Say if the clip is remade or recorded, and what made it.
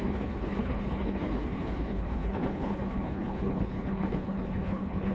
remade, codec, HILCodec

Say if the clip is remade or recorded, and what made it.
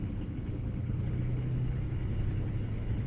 remade, codec, HILCodec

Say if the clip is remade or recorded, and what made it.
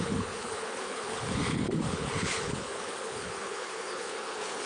remade, codec, HILCodec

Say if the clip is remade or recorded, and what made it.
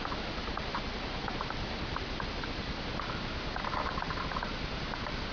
recorded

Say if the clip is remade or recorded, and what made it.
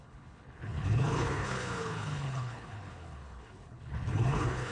remade, codec, HILCodec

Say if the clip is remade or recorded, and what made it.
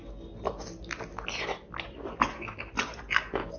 recorded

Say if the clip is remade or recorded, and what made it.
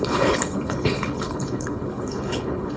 remade, codec, HILCodec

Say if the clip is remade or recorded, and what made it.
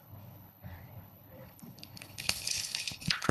remade, codec, HILCodec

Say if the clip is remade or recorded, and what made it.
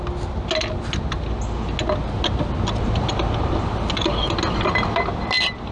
recorded